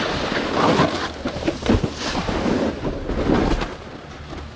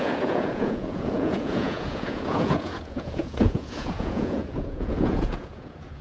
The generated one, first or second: second